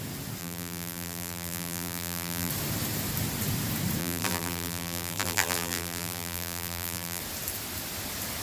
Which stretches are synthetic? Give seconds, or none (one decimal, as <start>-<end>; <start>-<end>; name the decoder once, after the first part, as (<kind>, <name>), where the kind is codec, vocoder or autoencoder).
0.4-2.5 (vocoder, BigVGAN v2); 4.0-7.2